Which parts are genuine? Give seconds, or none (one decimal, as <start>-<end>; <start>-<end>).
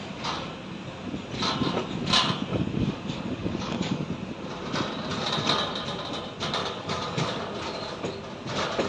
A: 0.0-2.5; 4.1-6.6; 7.4-8.9